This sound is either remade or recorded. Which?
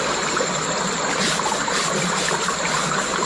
recorded